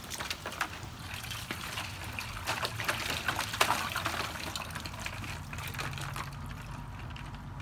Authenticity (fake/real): real